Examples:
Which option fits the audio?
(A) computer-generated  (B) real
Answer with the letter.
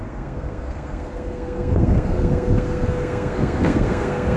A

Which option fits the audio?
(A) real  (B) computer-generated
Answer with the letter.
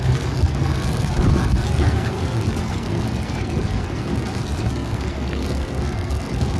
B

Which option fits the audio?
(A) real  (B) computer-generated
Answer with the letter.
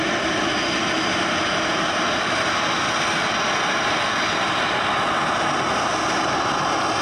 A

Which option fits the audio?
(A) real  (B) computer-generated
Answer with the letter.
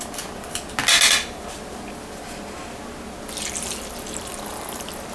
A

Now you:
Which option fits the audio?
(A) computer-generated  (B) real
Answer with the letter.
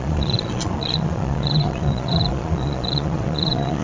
A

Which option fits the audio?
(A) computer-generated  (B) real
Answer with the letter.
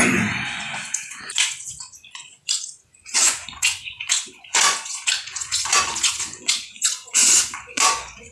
A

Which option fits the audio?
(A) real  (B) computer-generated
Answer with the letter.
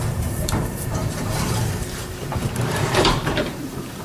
B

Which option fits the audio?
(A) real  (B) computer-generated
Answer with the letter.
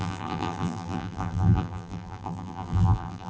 B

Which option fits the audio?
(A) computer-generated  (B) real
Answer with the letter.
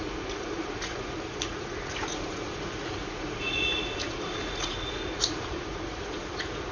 A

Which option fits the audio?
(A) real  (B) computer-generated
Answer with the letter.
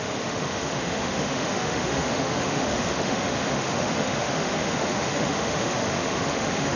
B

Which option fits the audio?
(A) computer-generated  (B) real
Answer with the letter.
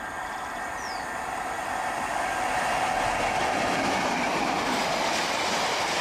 B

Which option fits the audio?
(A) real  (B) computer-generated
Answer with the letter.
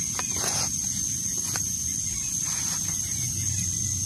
B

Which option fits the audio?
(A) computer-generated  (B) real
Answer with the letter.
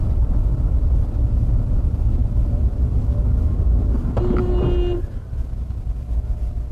B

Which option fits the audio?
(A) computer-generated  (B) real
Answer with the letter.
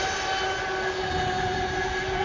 B